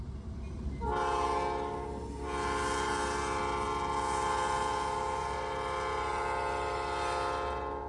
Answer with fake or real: real